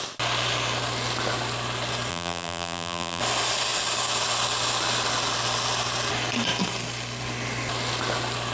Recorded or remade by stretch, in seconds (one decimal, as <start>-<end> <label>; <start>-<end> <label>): 0.0-2.1 recorded; 2.1-3.2 remade; 3.2-8.5 recorded